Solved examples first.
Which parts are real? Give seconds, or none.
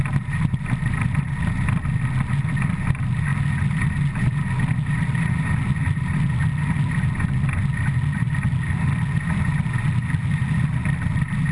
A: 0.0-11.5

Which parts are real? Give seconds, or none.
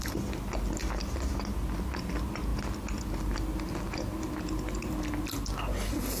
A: 0.0-6.2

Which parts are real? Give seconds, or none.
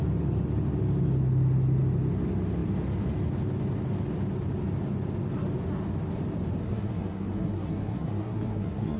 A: 0.0-6.6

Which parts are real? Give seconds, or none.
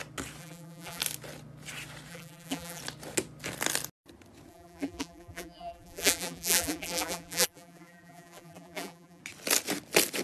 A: 0.0-0.4; 1.0-2.1; 2.8-4.5; 9.2-10.2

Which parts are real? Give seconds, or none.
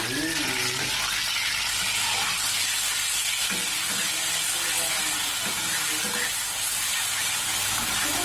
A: 0.0-8.2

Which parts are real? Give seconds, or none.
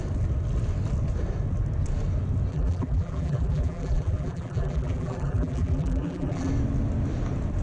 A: 0.0-2.5; 6.5-7.6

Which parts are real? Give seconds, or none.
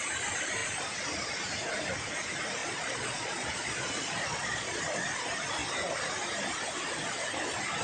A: 0.0-2.6; 4.8-7.8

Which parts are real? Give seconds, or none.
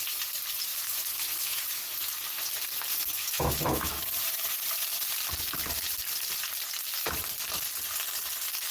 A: 0.0-0.7; 1.8-2.9; 3.9-8.7